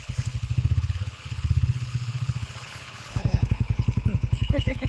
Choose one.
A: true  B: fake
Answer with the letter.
B